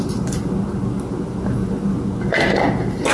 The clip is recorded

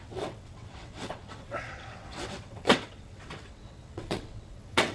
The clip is remade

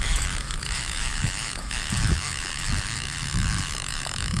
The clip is remade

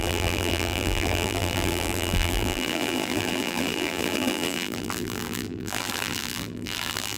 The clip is remade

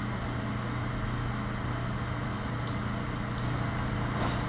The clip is recorded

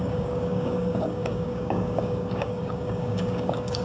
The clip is remade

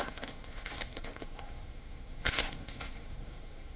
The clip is remade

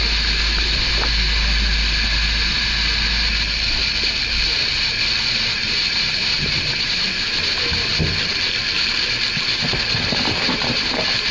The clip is recorded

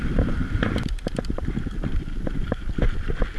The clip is remade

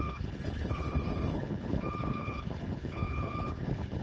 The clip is remade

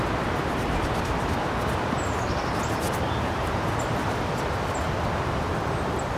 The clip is recorded